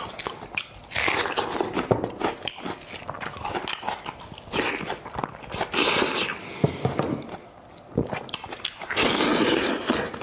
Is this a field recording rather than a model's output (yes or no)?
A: yes